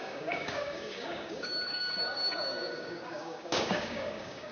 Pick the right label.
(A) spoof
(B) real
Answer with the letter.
A